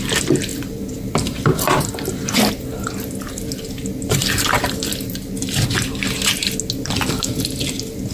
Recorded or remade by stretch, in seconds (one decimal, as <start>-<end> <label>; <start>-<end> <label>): 0.0-0.5 recorded; 0.5-2.5 remade; 2.5-4.2 recorded; 4.2-5.2 remade; 5.2-8.1 recorded